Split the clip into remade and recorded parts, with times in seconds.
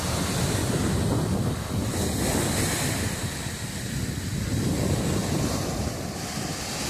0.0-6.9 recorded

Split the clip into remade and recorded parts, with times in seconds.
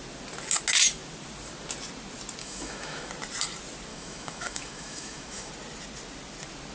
0.0-2.4 recorded; 2.4-3.1 remade; 3.1-3.9 recorded; 3.9-5.5 remade; 5.5-6.7 recorded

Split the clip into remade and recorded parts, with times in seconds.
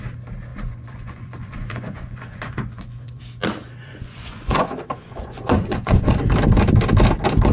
0.0-0.5 recorded; 0.5-3.2 remade; 3.2-3.8 recorded; 3.8-6.2 remade; 6.2-7.5 recorded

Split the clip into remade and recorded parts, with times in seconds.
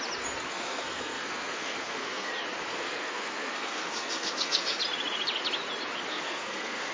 0.0-0.5 recorded; 0.5-2.3 remade; 2.3-2.7 recorded; 2.7-4.8 remade; 4.8-6.1 recorded; 6.1-6.9 remade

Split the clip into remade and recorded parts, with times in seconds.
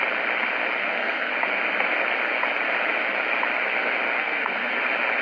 0.0-0.8 recorded; 0.8-1.3 remade; 1.3-4.2 recorded; 4.2-4.7 remade; 4.7-5.2 recorded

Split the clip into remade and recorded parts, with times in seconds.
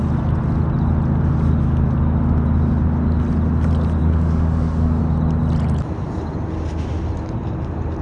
0.0-4.0 recorded; 4.0-5.0 remade; 5.0-8.0 recorded